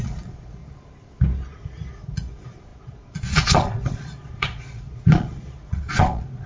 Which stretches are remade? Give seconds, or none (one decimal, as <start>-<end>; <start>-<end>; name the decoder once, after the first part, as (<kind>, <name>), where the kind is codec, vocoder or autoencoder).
0.0-0.6 (vocoder, Vocos); 1.9-6.5